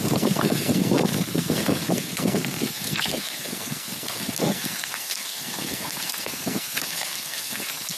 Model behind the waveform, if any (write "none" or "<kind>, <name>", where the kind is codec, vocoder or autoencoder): codec, SNAC